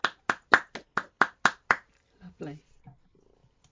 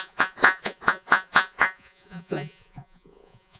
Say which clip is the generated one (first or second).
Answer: second